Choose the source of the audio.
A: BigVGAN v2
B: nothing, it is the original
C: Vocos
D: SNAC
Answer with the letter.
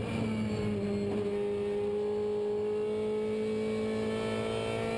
B